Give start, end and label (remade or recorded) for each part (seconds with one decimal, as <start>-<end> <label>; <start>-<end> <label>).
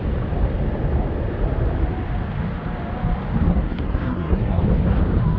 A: 0.0-3.5 recorded; 3.5-4.6 remade; 4.6-5.4 recorded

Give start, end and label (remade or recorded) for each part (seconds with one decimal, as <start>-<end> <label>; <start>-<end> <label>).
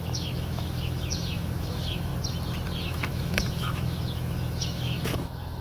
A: 0.0-2.1 remade; 2.1-2.8 recorded; 2.8-5.6 remade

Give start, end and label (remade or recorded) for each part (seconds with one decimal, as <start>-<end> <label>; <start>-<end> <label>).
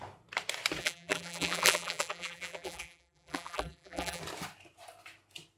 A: 0.0-0.8 recorded; 0.8-4.2 remade; 4.2-5.6 recorded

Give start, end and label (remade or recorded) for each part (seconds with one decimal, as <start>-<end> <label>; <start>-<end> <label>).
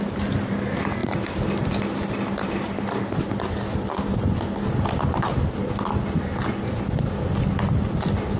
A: 0.0-8.4 recorded